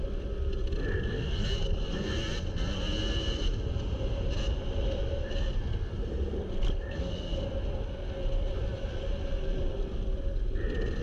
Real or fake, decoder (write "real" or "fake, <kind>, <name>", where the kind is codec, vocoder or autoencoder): real